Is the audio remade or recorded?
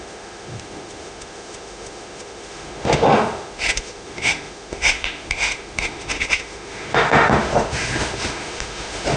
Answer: remade